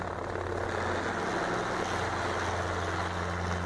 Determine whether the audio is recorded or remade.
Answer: recorded